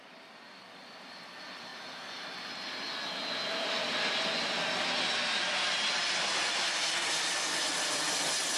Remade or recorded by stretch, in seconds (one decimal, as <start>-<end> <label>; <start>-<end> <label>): 0.0-1.7 remade; 1.7-5.9 recorded; 5.9-8.6 remade